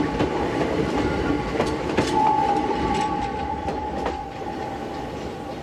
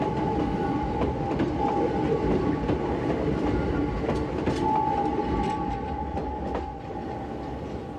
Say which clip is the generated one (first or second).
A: first